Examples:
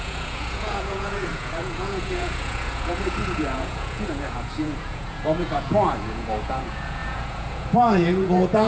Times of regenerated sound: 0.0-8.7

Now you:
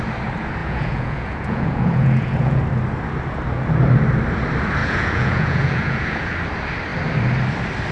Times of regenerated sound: 0.6-2.6; 4.8-6.3